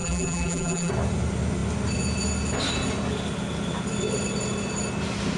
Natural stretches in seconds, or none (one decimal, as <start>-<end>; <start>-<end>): 0.9-5.4